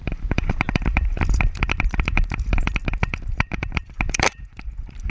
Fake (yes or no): yes